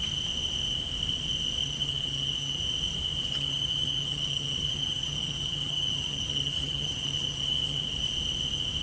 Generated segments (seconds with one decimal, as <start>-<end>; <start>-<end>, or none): 1.6-2.6; 3.3-7.8